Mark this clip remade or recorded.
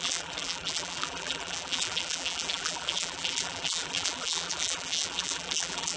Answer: remade